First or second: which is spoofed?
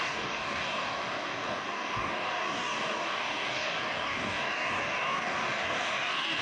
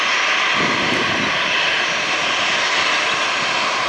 first